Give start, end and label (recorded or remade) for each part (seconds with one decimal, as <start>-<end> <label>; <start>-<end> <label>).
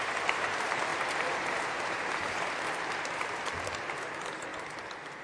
0.0-4.5 remade; 4.5-5.2 recorded